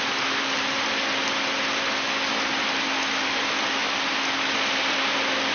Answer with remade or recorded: recorded